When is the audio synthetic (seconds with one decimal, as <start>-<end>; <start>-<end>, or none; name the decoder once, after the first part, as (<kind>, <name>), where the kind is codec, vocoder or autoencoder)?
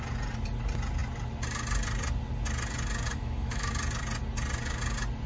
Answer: 3.1-3.7 (autoencoder, DAC-VAE)